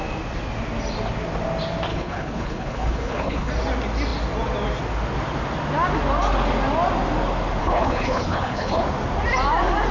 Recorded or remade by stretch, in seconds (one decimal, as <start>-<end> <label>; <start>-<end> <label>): 0.0-1.9 recorded; 1.9-3.5 remade; 3.5-7.6 recorded; 7.6-8.8 remade; 8.8-9.9 recorded